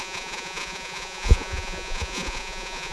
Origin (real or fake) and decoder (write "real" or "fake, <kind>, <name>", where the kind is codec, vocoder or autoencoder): fake, vocoder, Vocos